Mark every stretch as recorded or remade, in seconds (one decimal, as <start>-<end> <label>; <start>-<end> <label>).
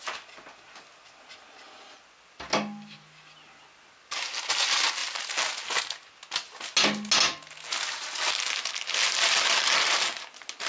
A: 0.0-10.7 recorded